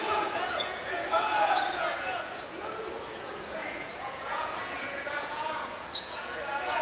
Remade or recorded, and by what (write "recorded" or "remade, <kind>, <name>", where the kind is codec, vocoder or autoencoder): remade, vocoder, Vocos